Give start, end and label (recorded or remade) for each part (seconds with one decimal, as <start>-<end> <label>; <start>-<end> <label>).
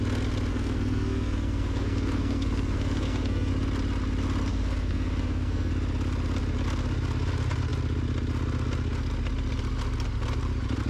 0.0-0.5 recorded; 0.5-3.5 remade; 3.5-4.5 recorded; 4.5-5.7 remade; 5.7-10.9 recorded